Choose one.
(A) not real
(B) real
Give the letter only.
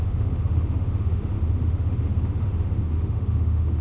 A